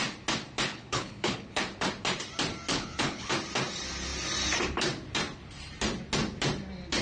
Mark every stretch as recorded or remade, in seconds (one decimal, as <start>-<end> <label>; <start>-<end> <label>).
0.0-0.7 recorded; 0.7-1.6 remade; 1.6-2.7 recorded; 2.7-3.3 remade; 3.3-7.0 recorded